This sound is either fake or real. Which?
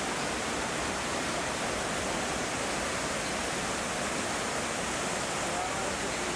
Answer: real